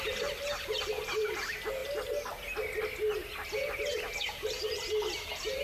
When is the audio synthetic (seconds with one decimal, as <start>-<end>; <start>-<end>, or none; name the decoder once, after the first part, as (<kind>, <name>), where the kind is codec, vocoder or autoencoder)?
none